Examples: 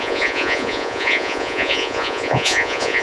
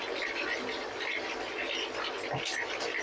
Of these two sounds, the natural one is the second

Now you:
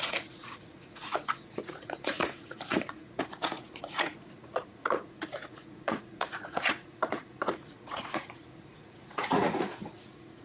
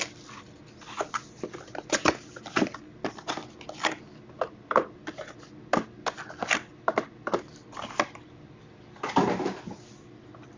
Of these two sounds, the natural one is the second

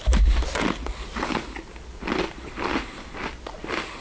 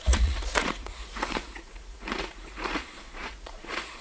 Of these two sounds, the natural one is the first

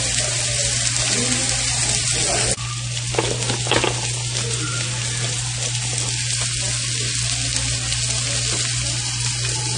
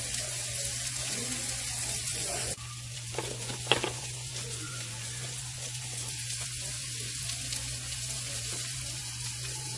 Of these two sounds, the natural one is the first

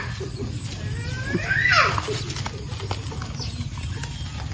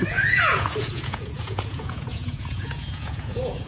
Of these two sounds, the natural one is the first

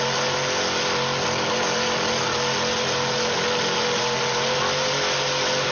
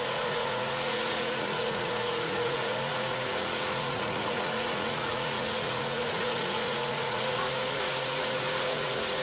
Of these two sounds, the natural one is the first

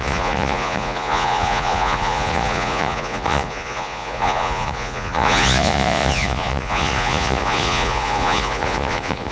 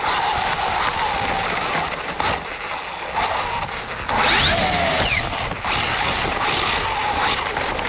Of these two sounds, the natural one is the second